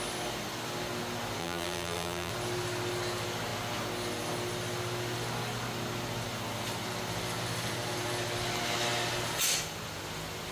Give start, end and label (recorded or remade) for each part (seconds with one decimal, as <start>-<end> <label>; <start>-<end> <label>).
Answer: 0.0-1.4 recorded; 1.4-2.3 remade; 2.3-10.5 recorded